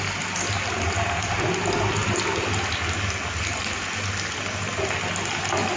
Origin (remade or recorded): recorded